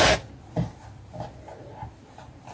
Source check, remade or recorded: recorded